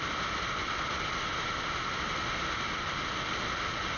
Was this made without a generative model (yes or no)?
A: yes